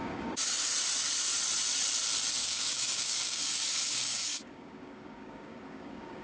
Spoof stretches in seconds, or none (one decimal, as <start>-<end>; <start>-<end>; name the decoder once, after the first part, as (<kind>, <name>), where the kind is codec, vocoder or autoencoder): 0.0-0.7 (codec, DAC); 2.3-6.2